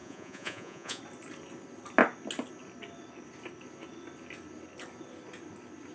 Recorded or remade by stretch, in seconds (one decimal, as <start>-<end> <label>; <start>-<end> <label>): 0.0-1.0 remade; 1.0-5.9 recorded